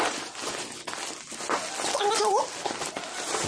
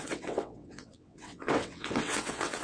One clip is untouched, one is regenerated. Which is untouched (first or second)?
first